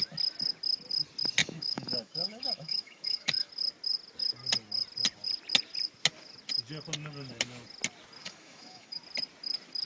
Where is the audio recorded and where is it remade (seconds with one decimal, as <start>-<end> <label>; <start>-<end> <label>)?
0.0-1.4 recorded; 1.4-3.5 remade; 3.5-8.2 recorded; 8.2-9.0 remade; 9.0-9.9 recorded